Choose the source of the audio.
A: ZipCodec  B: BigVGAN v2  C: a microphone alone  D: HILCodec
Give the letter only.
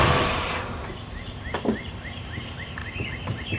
B